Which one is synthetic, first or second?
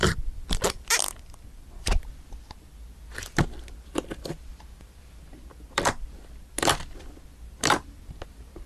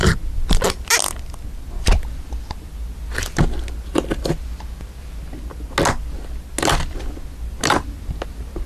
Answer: first